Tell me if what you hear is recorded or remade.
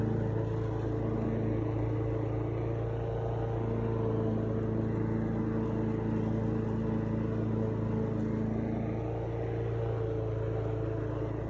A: recorded